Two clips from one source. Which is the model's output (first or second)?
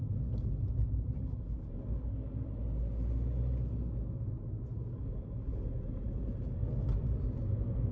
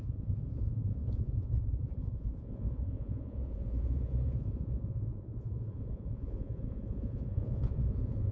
second